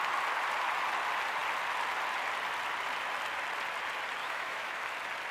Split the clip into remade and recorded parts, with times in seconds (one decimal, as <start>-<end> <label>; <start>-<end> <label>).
0.0-4.2 recorded; 4.2-4.8 remade; 4.8-5.3 recorded